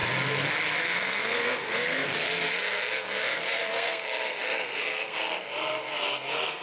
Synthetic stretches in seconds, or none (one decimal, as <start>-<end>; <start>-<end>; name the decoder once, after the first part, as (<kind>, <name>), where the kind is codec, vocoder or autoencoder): 0.8-6.6 (codec, SNAC)